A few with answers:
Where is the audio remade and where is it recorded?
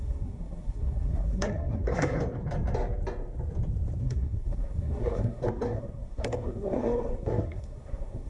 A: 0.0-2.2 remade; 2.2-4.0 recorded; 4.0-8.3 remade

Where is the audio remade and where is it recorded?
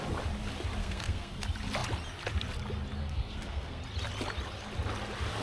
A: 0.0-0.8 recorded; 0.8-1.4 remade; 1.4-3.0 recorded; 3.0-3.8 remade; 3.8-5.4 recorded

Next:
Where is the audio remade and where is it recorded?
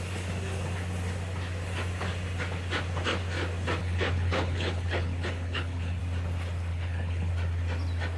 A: 0.0-3.8 recorded; 3.8-6.0 remade; 6.0-6.7 recorded; 6.7-7.3 remade; 7.3-8.2 recorded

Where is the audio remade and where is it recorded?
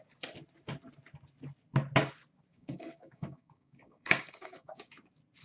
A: 0.0-2.5 recorded; 2.5-4.9 remade; 4.9-5.4 recorded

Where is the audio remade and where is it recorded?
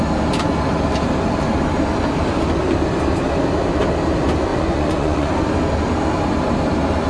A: 0.0-4.5 recorded; 4.5-5.3 remade; 5.3-7.1 recorded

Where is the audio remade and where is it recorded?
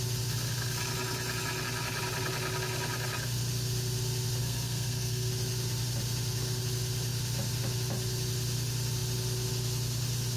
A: 0.0-4.4 recorded; 4.4-5.3 remade; 5.3-10.4 recorded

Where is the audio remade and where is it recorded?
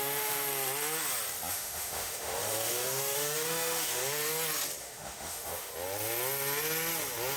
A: 0.0-0.5 remade; 0.5-1.5 recorded; 1.5-4.0 remade; 4.0-4.8 recorded; 4.8-5.7 remade; 5.7-7.4 recorded